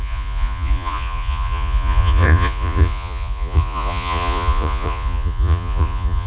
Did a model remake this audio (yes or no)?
yes